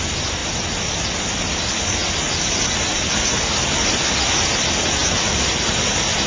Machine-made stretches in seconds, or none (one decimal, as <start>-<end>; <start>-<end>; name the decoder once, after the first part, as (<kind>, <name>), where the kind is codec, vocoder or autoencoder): none